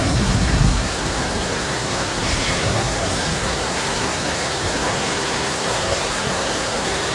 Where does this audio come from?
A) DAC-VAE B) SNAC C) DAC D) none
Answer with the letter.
B